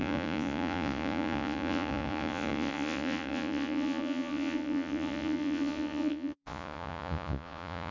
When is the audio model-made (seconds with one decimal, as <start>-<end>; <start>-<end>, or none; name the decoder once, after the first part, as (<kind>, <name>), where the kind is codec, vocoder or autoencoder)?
0.0-7.9 (vocoder, Vocos)